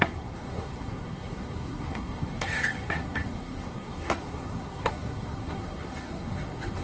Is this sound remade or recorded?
remade